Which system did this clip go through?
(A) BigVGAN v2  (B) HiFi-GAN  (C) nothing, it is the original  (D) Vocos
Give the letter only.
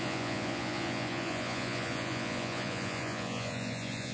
D